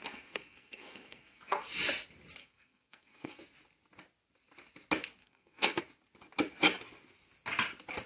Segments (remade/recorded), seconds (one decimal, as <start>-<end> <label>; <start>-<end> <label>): 0.0-1.6 remade; 1.6-2.4 recorded; 2.4-3.4 remade; 3.4-5.2 recorded; 5.2-5.8 remade; 5.8-8.1 recorded